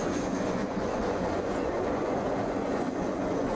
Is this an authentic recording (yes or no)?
no